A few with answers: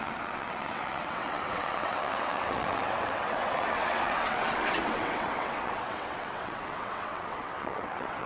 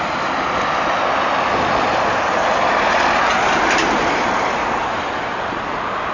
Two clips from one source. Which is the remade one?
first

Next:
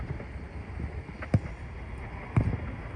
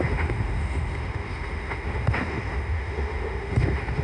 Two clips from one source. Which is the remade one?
second